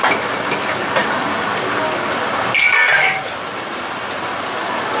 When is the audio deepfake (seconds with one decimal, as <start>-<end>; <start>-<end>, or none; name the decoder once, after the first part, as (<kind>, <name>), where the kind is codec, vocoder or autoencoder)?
none